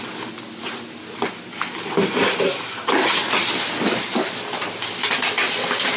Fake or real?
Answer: real